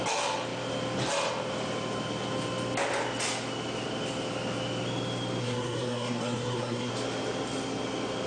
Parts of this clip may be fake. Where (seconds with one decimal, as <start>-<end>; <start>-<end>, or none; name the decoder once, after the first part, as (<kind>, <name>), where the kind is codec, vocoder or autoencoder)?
5.4-6.9 (codec, SNAC)